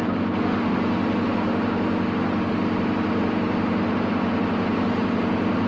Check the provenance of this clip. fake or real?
real